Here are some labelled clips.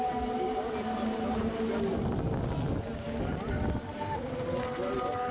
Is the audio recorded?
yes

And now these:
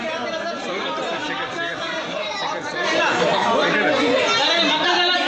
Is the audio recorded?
yes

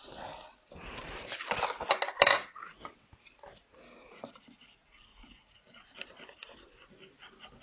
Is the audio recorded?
yes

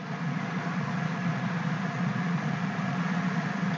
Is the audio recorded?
no